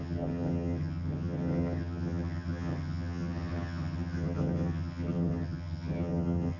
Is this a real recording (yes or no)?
no